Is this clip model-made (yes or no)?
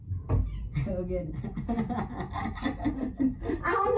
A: no